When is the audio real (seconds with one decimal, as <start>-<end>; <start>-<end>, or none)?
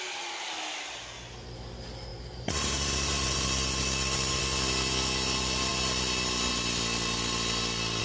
0.0-2.1; 4.4-8.0